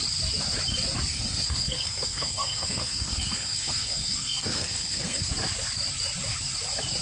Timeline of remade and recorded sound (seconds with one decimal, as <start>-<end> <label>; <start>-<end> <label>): 0.0-1.1 recorded; 1.1-5.3 remade; 5.3-7.0 recorded